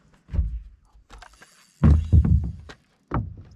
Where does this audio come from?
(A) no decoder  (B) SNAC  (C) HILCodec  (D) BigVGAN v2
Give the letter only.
A